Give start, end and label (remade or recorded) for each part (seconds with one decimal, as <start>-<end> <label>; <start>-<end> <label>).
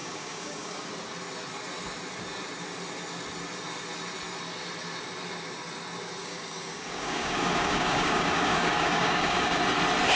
0.0-0.9 remade; 0.9-6.2 recorded; 6.2-9.6 remade; 9.6-10.2 recorded